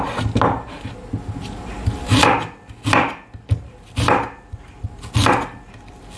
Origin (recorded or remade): recorded